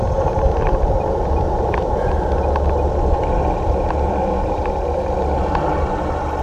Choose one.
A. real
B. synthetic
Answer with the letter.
A